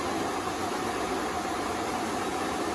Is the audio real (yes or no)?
yes